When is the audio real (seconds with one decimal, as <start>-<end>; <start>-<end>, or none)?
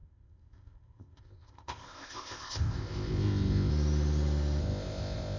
3.7-4.6